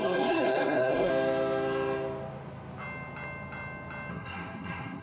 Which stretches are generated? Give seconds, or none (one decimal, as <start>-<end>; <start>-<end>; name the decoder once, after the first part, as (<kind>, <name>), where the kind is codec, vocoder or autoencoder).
0.0-1.1 (codec, SNAC); 4.1-5.0